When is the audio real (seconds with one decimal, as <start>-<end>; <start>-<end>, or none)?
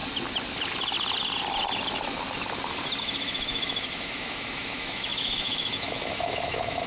0.0-3.0